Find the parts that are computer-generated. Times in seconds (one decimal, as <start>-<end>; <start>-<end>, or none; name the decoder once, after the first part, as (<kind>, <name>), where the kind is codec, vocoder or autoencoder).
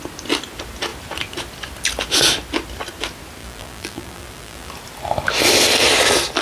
3.4-4.7 (vocoder, BigVGAN v2)